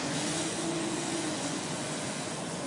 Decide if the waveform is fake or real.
fake